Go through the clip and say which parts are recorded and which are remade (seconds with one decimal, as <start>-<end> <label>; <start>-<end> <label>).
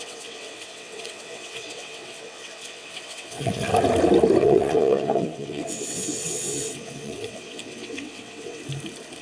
0.0-3.7 remade; 3.7-4.4 recorded; 4.4-8.6 remade; 8.6-9.2 recorded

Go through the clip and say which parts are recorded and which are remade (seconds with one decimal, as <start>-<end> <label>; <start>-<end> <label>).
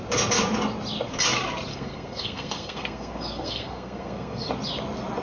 0.0-1.7 recorded; 1.7-4.5 remade; 4.5-5.2 recorded